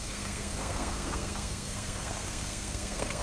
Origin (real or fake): fake